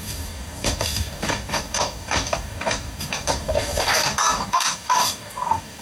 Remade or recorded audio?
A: remade